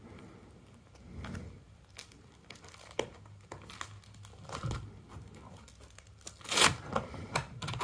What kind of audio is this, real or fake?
real